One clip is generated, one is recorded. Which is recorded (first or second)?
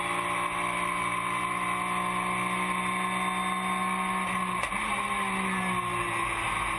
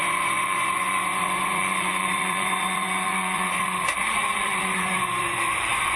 first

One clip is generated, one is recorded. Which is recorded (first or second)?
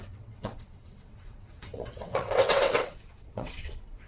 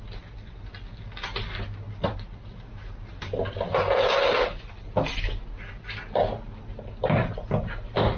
second